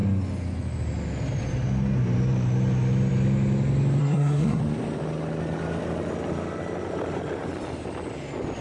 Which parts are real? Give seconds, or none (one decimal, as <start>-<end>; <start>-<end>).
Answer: 0.0-4.0; 4.6-8.6